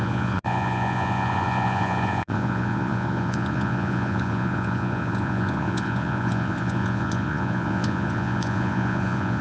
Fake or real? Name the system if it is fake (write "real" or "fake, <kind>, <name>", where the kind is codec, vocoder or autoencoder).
fake, vocoder, Vocos